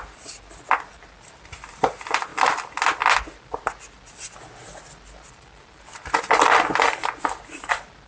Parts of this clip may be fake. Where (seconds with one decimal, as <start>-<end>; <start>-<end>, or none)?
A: none